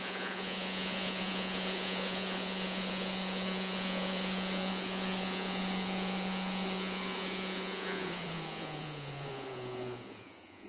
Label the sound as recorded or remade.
remade